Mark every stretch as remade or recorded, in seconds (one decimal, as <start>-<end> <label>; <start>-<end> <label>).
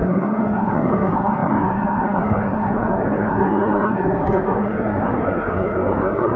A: 0.0-6.4 remade